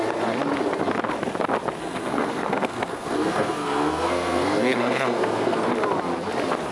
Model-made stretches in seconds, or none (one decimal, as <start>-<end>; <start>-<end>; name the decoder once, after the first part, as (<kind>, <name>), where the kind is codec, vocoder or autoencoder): 1.8-5.7 (codec, SNAC)